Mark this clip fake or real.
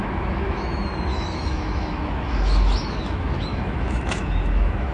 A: fake